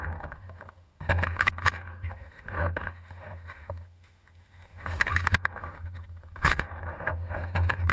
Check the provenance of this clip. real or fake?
fake